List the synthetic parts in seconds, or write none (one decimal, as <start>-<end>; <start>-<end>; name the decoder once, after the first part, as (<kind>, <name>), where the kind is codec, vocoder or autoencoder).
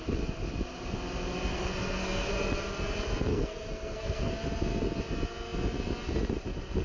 1.5-2.3 (codec, SNAC); 3.3-4.3